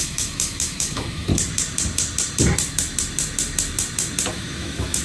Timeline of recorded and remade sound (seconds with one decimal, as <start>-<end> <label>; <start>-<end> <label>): 0.0-1.3 remade; 1.3-4.3 recorded; 4.3-5.0 remade